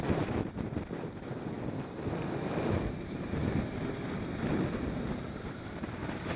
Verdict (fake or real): real